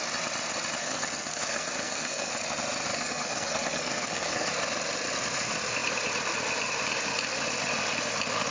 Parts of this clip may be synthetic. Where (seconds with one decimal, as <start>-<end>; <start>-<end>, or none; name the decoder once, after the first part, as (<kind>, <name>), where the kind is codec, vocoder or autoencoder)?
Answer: 0.8-2.3 (codec, SNAC); 2.9-4.5